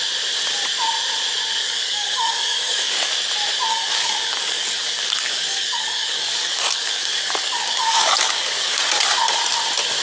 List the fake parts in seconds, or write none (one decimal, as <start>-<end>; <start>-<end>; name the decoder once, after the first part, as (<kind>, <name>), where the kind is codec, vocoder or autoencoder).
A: 1.6-3.1 (codec, DAC); 3.7-8.8